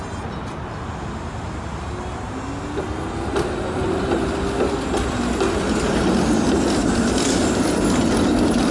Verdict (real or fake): real